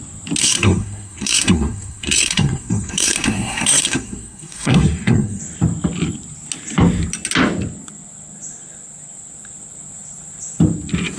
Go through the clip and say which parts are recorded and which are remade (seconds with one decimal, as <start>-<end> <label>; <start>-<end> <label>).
0.0-0.4 recorded; 0.4-5.4 remade; 5.4-11.2 recorded